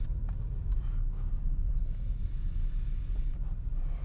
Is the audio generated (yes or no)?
no